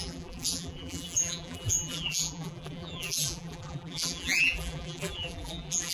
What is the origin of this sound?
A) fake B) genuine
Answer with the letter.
A